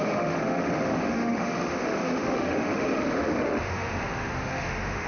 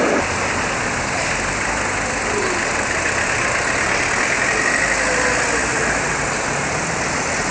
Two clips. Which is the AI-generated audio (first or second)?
first